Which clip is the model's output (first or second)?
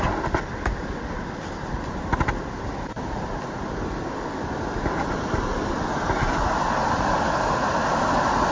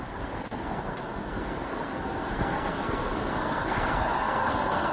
second